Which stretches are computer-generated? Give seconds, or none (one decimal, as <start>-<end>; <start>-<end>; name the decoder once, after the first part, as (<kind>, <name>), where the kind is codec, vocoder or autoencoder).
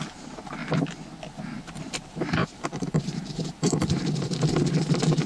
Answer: 0.0-0.6 (vocoder, BigVGAN v2); 1.7-5.3